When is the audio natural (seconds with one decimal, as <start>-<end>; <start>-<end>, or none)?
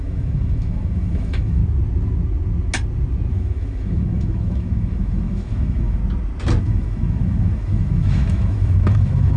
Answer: 1.6-3.3; 6.0-6.6